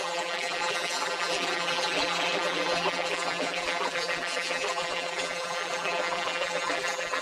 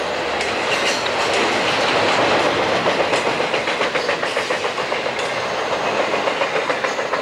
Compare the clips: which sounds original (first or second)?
second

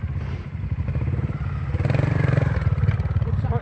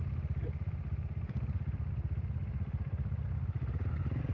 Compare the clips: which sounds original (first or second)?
second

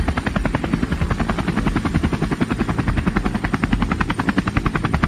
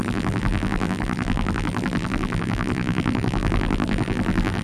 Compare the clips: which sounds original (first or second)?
first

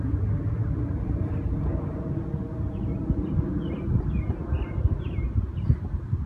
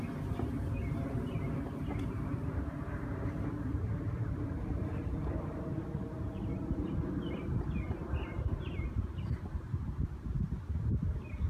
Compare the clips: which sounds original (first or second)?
first